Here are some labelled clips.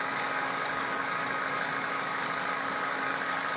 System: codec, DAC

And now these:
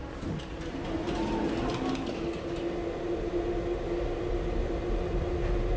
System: none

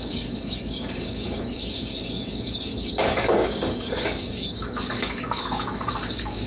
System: codec, DAC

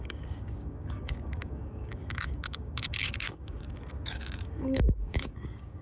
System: codec, DAC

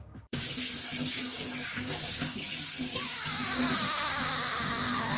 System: codec, DAC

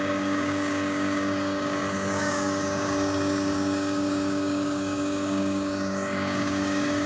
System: codec, DAC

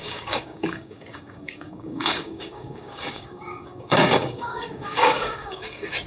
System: codec, DAC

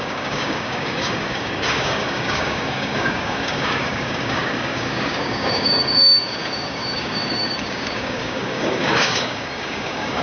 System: codec, DAC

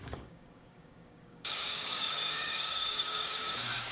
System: codec, DAC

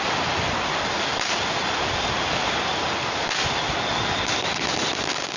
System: none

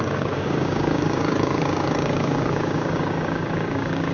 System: codec, DAC